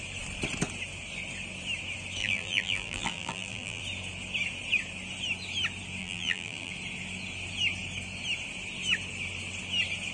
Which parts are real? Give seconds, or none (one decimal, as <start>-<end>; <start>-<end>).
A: 0.0-2.2; 3.8-6.0; 6.7-10.1